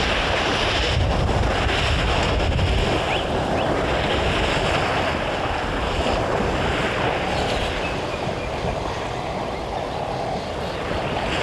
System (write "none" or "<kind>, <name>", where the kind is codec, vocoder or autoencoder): none